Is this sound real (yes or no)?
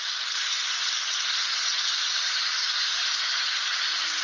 yes